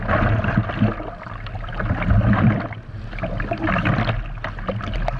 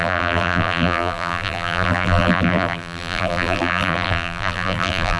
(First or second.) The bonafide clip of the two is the first